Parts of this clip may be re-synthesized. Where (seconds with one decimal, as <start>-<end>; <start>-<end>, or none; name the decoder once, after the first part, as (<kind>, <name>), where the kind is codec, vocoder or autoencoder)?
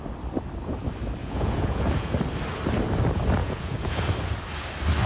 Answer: 1.2-2.1 (vocoder, Vocos); 3.4-4.0